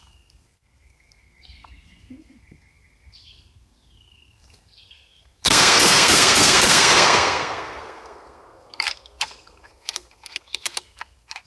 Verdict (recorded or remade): remade